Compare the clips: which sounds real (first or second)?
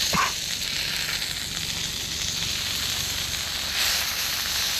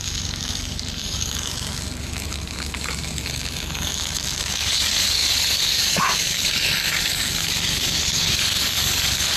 first